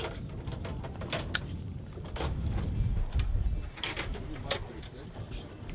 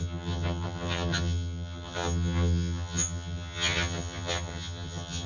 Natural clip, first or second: first